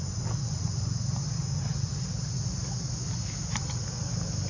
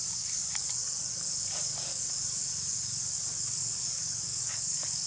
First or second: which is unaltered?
first